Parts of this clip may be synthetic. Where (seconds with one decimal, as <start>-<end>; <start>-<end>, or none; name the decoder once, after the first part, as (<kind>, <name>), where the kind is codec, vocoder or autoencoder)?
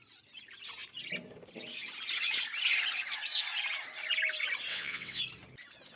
4.7-5.2 (vocoder, WaveNeXt)